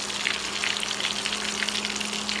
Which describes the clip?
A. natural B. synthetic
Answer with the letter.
A